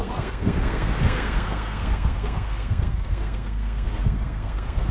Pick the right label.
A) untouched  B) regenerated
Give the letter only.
B